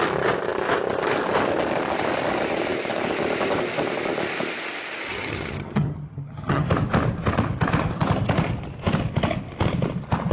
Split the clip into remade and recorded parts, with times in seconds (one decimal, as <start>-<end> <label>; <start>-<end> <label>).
0.0-5.1 recorded; 5.1-6.7 remade; 6.7-10.3 recorded